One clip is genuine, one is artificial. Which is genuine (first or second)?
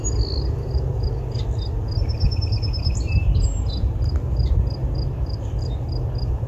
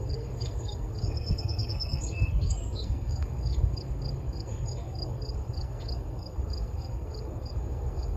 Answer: first